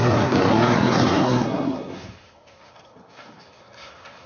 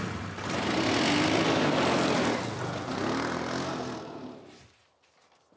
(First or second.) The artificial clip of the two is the first